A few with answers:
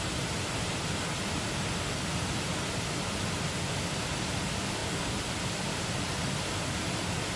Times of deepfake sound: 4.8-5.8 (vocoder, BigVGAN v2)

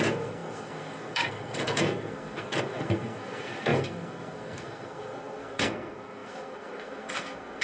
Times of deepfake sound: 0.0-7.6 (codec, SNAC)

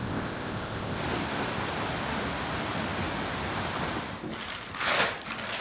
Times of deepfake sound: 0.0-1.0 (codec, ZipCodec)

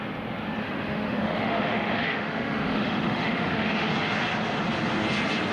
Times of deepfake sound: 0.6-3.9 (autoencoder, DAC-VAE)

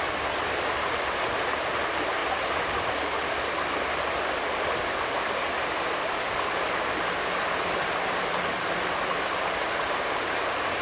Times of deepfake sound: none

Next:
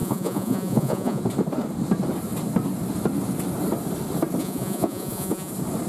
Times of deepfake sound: 0.0-1.2 (vocoder, Vocos); 4.4-5.5

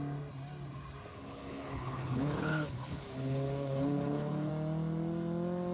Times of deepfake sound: 1.1-4.5 (codec, HILCodec)

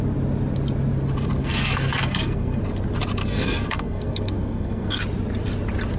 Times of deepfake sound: 1.4-2.6 (codec, SNAC); 3.2-5.0